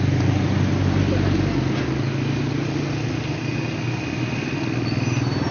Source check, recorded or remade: recorded